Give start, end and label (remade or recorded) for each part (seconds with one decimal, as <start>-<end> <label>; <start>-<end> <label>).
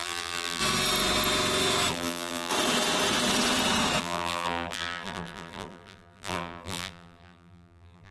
0.0-0.6 remade; 0.6-1.9 recorded; 1.9-2.5 remade; 2.5-4.0 recorded; 4.0-8.1 remade